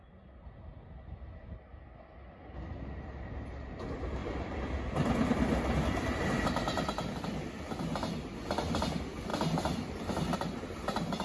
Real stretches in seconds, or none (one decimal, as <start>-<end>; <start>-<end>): 0.0-4.2; 4.8-9.3; 10.1-11.2